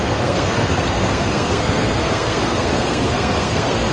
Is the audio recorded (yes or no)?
no